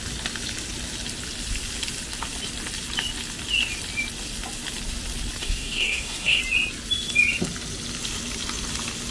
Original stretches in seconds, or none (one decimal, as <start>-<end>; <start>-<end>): 0.0-5.4; 6.4-9.1